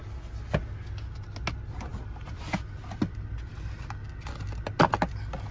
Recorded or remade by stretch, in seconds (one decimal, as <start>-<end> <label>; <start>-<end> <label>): 0.0-5.5 recorded